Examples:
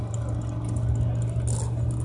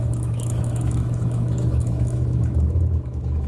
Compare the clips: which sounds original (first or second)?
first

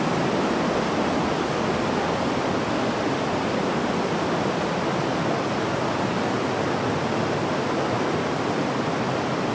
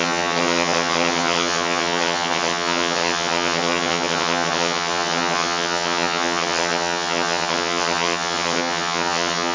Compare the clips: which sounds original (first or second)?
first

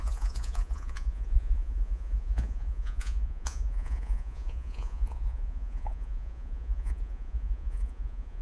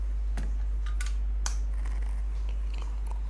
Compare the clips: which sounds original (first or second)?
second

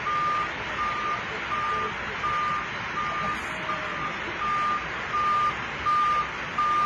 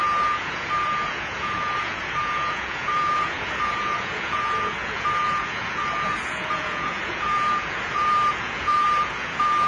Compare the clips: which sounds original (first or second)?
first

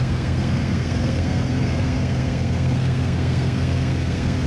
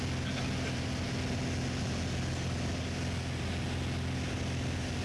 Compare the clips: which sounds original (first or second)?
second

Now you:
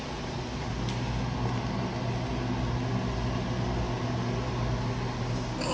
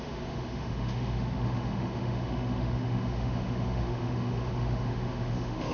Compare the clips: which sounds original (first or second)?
first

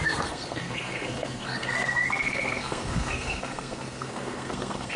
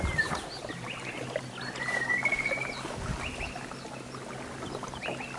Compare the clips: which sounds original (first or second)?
second